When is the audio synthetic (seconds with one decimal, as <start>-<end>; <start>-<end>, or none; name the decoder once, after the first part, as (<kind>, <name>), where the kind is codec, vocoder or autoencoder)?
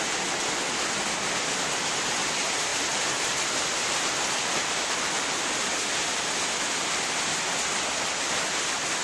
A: none